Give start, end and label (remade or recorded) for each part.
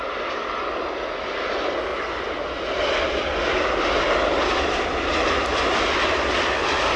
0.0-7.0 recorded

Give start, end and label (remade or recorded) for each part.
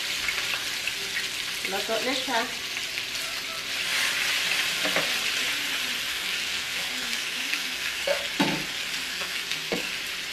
0.0-6.1 recorded; 6.1-8.2 remade; 8.2-9.1 recorded; 9.1-9.9 remade; 9.9-10.3 recorded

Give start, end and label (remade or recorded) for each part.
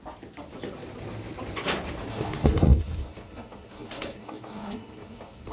0.0-2.1 recorded; 2.1-5.5 remade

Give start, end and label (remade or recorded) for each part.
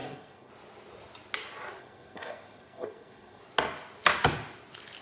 0.0-0.5 remade; 0.5-1.8 recorded; 1.8-3.4 remade; 3.4-5.0 recorded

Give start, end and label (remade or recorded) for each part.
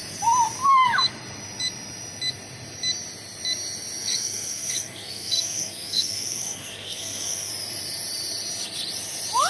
0.0-4.0 recorded; 4.0-7.5 remade; 7.5-9.5 recorded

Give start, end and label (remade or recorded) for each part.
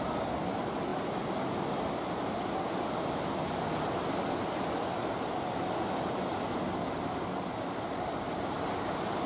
0.0-9.3 recorded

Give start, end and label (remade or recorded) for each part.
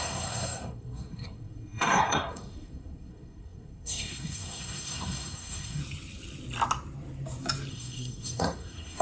0.0-5.8 remade; 5.8-7.7 recorded; 7.7-9.0 remade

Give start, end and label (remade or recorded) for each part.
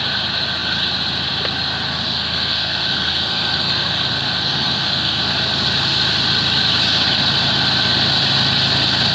0.0-1.9 recorded; 1.9-5.2 remade; 5.2-9.1 recorded